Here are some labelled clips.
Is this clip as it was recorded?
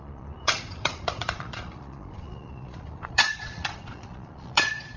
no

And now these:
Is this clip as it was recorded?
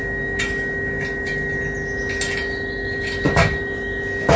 yes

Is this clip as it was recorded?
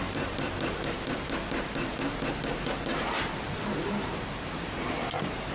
no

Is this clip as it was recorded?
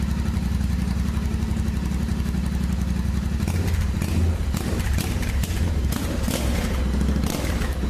yes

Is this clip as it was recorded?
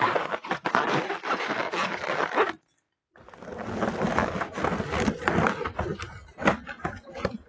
no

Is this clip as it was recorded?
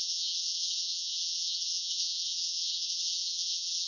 no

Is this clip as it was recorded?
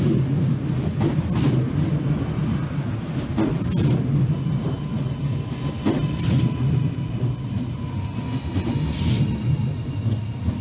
yes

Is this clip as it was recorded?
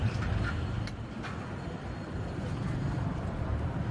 no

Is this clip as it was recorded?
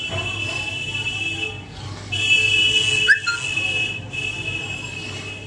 yes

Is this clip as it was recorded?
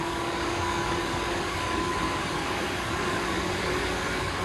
no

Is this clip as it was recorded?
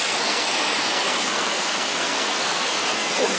no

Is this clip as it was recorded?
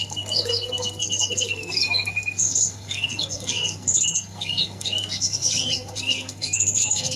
no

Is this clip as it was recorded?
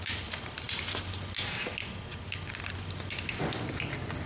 yes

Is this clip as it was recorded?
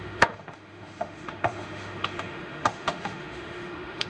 no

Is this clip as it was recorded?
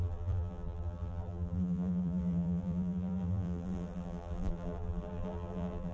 no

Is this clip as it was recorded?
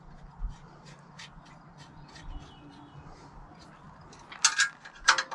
yes